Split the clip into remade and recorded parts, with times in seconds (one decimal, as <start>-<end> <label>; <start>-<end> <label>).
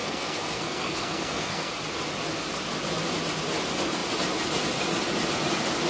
0.0-1.7 remade; 1.7-5.9 recorded